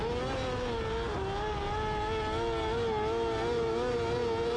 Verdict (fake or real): real